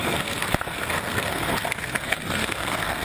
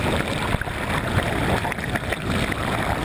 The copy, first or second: first